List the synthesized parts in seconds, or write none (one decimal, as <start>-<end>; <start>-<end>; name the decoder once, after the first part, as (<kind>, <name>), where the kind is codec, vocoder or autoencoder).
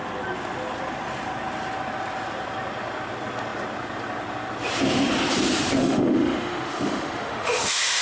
5.8-8.0 (autoencoder, DAC-VAE)